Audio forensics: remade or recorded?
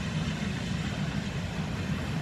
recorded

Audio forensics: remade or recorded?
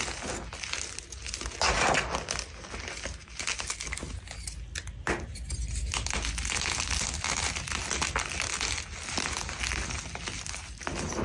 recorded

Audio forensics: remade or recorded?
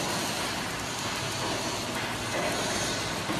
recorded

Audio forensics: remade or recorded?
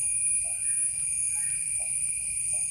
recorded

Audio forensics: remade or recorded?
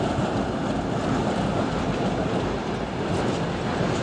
recorded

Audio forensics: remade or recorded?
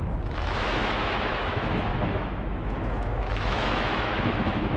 remade